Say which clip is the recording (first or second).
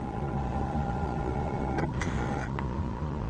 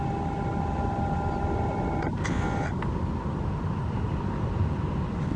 second